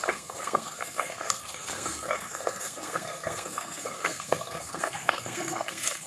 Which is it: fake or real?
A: fake